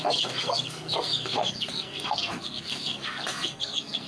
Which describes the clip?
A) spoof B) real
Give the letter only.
A